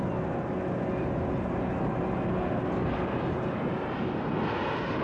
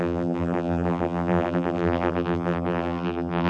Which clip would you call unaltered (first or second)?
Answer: first